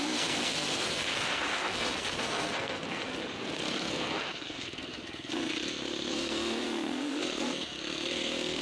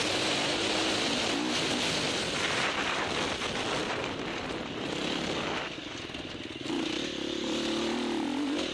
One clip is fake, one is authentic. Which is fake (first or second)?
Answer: first